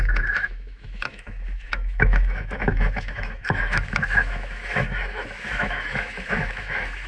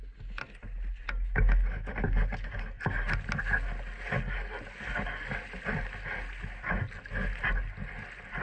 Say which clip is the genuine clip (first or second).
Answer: second